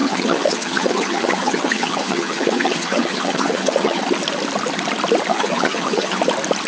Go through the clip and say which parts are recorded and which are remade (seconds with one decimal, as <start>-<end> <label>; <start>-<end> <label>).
0.0-4.0 remade; 4.0-5.3 recorded; 5.3-6.2 remade; 6.2-6.7 recorded